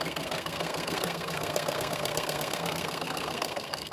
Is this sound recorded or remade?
remade